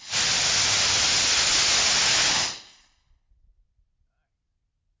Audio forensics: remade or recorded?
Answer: recorded